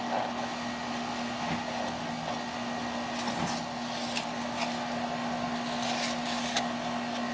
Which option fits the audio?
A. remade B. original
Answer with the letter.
B